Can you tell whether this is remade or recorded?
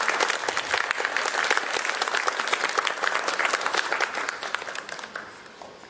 recorded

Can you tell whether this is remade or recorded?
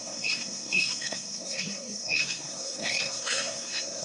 remade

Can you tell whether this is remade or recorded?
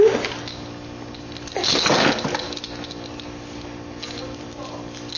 recorded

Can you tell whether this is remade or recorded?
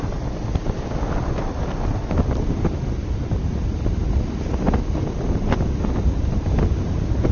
recorded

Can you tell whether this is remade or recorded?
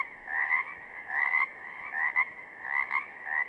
remade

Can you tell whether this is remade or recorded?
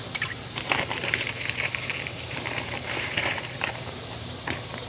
remade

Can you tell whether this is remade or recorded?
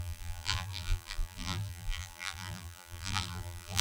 remade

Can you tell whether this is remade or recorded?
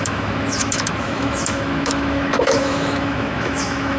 remade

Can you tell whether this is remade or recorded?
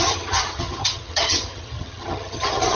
remade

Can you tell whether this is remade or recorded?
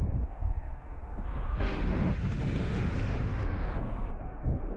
remade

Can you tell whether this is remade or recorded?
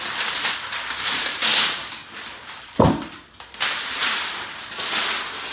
recorded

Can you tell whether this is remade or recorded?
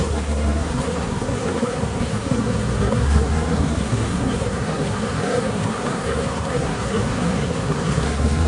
remade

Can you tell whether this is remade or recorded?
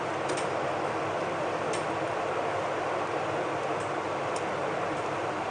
recorded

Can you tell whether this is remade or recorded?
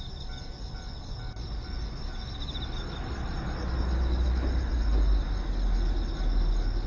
recorded